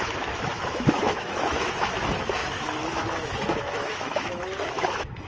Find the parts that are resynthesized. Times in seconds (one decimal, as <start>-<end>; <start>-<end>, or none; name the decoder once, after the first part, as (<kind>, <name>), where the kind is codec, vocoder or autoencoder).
0.0-5.3 (autoencoder, DAC-VAE)